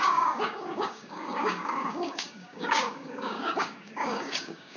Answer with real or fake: fake